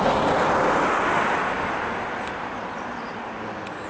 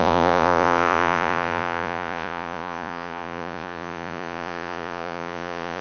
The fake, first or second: second